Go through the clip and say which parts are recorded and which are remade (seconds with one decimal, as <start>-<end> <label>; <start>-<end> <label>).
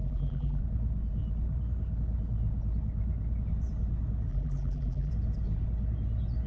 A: 0.0-0.6 remade; 0.6-4.3 recorded; 4.3-5.1 remade; 5.1-6.5 recorded